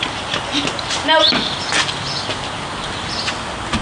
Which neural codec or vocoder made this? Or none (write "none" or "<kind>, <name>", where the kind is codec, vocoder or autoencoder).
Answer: none